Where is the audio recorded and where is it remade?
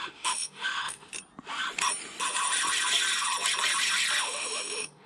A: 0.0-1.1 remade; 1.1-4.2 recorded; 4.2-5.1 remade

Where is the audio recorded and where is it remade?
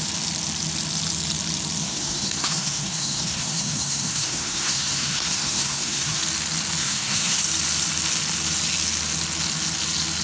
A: 0.0-1.8 recorded; 1.8-6.2 remade; 6.2-6.8 recorded; 6.8-7.4 remade; 7.4-10.2 recorded